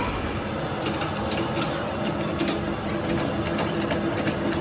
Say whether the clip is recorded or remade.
recorded